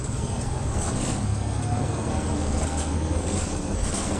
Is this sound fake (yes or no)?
yes